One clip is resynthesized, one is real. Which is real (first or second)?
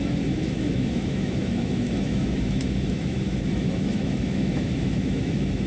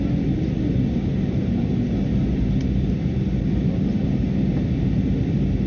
second